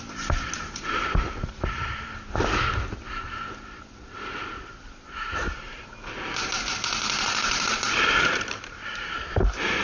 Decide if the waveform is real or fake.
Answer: fake